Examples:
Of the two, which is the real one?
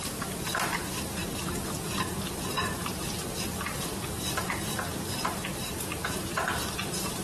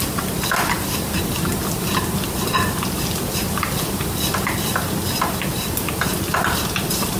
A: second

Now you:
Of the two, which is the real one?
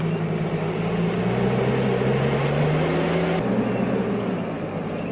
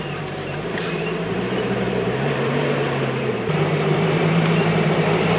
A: first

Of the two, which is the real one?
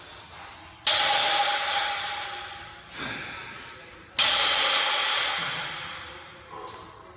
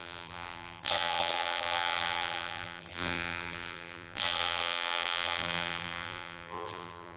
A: first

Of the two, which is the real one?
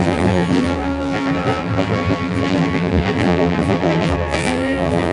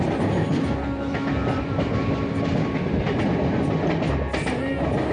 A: second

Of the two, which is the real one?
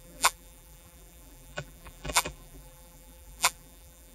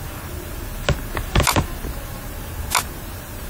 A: second